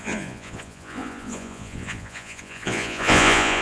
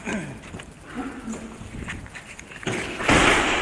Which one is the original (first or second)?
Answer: second